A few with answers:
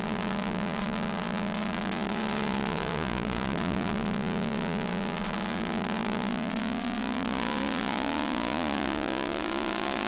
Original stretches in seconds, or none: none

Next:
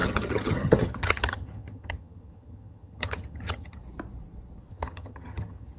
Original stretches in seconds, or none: 3.8-4.7

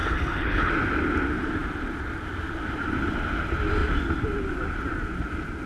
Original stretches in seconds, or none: 0.7-5.7

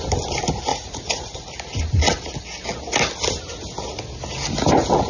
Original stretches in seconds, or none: 0.0-0.7; 1.4-5.1

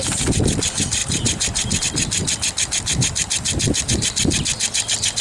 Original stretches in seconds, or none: 0.0-1.0; 1.8-5.2

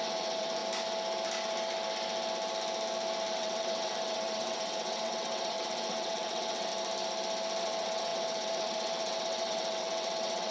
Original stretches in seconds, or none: 0.6-3.3; 6.7-7.6